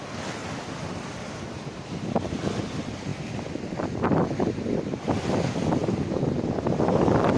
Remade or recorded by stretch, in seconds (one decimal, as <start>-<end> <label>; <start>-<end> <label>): 0.0-0.4 recorded; 0.4-2.4 remade; 2.4-3.1 recorded; 3.1-5.3 remade; 5.3-5.8 recorded; 5.8-7.4 remade